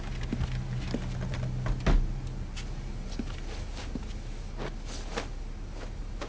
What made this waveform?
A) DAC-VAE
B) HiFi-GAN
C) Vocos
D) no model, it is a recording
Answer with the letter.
D